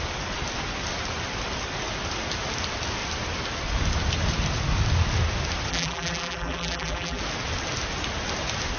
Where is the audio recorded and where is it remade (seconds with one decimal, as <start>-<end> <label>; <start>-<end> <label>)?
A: 0.0-5.7 recorded; 5.7-7.2 remade; 7.2-8.8 recorded